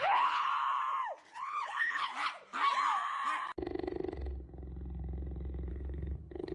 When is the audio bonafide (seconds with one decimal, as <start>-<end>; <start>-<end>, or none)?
0.5-1.3; 2.1-5.7